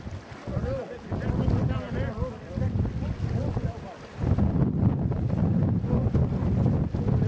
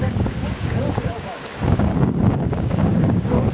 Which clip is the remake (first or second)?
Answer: second